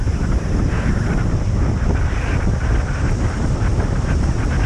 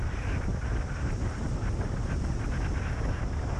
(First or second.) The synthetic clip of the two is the first